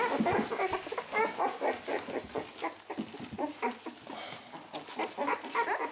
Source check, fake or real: real